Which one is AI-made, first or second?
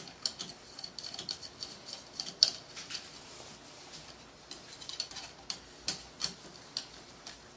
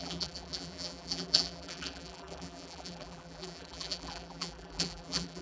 second